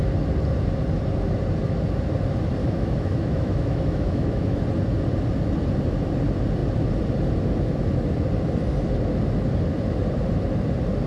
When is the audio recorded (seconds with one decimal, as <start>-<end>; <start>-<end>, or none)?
0.0-2.6; 4.6-11.1